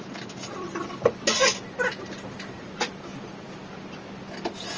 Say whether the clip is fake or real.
real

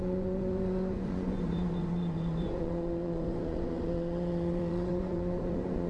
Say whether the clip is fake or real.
fake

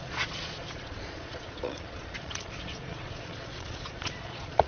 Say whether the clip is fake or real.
fake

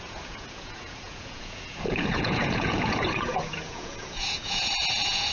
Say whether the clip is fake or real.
fake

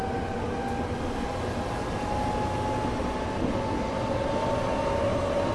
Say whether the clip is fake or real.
real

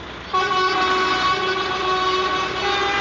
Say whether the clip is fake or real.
real